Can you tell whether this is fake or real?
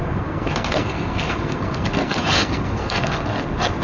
fake